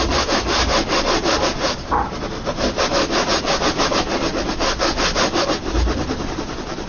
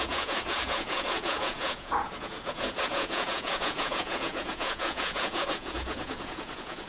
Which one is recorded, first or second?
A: first